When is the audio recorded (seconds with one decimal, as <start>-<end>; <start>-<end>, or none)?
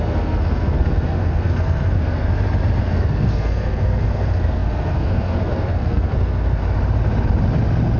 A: 2.3-2.8; 6.6-8.0